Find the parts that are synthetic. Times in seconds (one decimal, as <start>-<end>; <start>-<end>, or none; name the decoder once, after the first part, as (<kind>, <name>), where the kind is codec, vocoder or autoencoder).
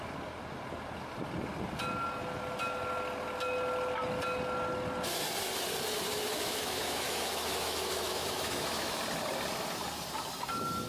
6.1-9.0 (autoencoder, DAC-VAE)